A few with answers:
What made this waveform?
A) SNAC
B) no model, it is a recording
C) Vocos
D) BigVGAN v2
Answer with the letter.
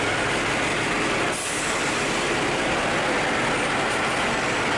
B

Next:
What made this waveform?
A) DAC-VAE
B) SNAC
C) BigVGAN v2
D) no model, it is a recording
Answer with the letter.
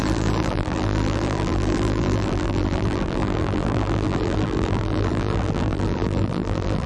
C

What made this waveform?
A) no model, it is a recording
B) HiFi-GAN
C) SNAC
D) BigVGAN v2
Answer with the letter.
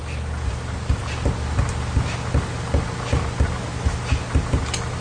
A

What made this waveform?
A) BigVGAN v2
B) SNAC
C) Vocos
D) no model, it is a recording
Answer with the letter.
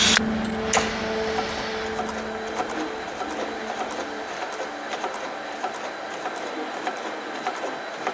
D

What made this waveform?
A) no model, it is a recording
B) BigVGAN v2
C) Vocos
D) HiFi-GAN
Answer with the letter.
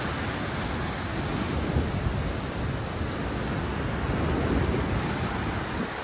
A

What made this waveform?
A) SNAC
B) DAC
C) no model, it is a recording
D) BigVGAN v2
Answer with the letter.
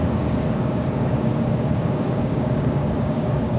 B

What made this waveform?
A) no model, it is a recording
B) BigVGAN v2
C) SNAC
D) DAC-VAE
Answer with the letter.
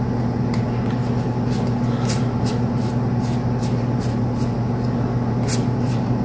A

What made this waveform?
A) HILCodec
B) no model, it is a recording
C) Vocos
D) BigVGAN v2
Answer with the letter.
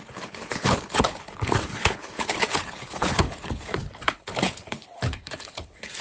A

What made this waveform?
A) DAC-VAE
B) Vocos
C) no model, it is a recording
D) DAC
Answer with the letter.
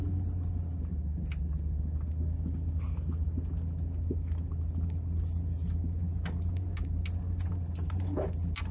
C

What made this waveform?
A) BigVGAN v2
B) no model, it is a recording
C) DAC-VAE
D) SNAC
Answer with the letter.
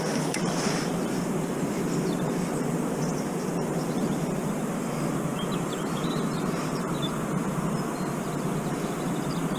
B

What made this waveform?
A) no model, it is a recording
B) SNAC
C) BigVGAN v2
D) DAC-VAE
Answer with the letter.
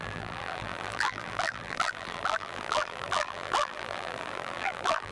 C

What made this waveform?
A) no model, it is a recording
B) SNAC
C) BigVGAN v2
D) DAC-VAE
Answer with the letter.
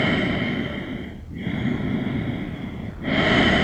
A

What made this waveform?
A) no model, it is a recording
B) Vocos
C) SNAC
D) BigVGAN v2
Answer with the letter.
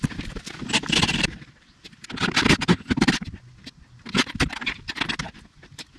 A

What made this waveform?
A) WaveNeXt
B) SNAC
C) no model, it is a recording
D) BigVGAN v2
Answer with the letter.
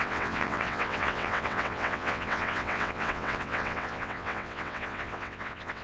A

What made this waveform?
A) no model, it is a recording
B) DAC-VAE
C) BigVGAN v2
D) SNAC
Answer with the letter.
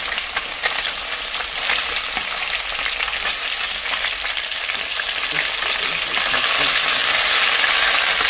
A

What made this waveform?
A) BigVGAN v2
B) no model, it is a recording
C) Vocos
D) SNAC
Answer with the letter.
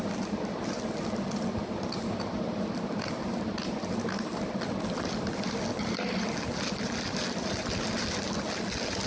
B